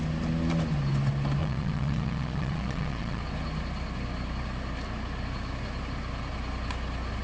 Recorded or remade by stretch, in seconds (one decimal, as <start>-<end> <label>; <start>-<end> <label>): 0.0-1.4 recorded; 1.4-3.2 remade; 3.2-7.2 recorded

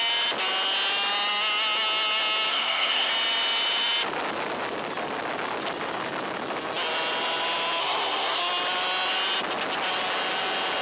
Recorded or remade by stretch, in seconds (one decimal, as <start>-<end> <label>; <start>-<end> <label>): 0.0-2.5 recorded; 2.5-3.1 remade; 3.1-7.8 recorded; 7.8-8.4 remade; 8.4-10.8 recorded

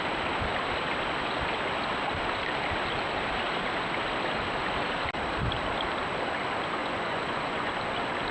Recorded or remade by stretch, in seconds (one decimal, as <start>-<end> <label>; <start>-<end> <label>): 0.0-6.8 recorded; 6.8-7.7 remade; 7.7-8.3 recorded

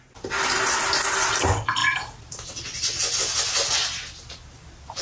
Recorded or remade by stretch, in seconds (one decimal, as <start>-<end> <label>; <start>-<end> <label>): 0.0-5.0 recorded

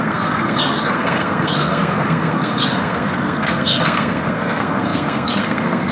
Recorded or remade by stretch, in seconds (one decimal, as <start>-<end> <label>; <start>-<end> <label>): 0.0-5.9 remade

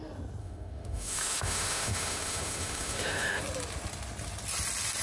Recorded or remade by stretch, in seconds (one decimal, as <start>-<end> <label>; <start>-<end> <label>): 0.0-0.4 recorded; 0.4-3.4 remade; 3.4-5.0 recorded

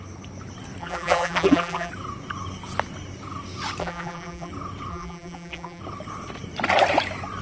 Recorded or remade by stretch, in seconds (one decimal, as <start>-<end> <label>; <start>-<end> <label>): 0.0-0.8 recorded; 0.8-1.9 remade; 1.9-3.8 recorded; 3.8-4.5 remade; 4.5-4.9 recorded; 4.9-5.8 remade; 5.8-7.4 recorded

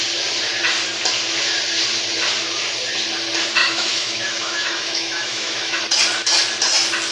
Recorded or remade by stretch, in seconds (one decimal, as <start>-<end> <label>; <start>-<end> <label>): 0.0-3.6 recorded; 3.6-5.8 remade; 5.8-7.1 recorded